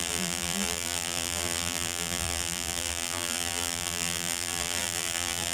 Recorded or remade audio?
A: remade